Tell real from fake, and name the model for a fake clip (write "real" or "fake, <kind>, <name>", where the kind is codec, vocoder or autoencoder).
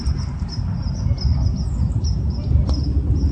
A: real